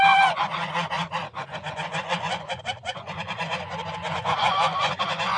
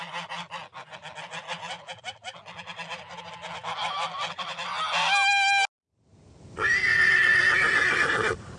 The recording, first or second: second